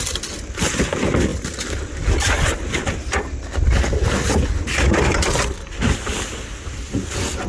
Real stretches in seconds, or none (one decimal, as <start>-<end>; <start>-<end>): 0.0-7.5